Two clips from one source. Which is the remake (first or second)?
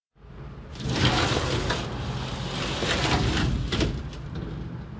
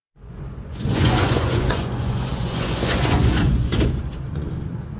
second